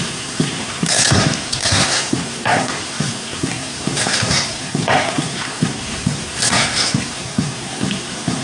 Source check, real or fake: fake